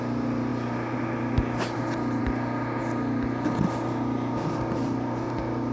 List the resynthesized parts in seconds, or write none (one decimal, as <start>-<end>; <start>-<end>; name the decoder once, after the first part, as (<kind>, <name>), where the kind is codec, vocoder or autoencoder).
none